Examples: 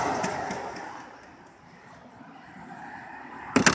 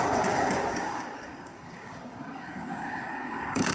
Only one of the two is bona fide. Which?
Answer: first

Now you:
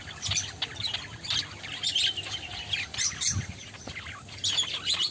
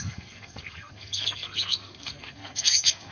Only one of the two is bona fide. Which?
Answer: first